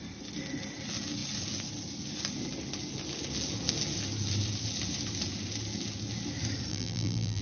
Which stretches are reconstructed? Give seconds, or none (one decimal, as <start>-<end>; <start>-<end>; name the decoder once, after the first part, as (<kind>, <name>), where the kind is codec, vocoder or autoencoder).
6.7-7.4 (vocoder, BigVGAN v2)